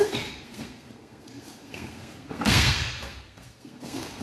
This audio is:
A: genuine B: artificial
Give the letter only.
B